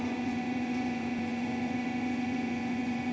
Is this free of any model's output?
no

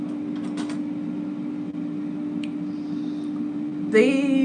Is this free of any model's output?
yes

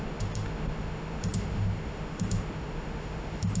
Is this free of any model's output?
no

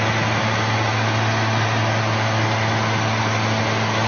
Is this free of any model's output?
yes